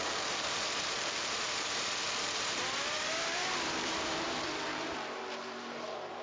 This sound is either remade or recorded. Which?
remade